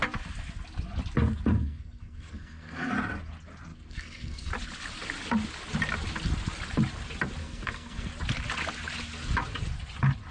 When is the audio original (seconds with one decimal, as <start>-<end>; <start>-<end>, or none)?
0.0-1.5; 2.9-3.7; 4.5-7.4; 8.1-10.3